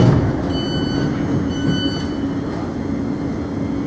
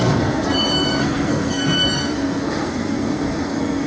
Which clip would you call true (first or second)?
first